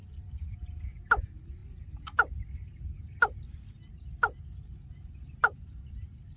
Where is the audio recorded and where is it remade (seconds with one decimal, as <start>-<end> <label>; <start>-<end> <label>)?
0.0-6.4 recorded